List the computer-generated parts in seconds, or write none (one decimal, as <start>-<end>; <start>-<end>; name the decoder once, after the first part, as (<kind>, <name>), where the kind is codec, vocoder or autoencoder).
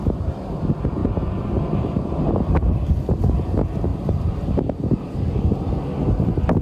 none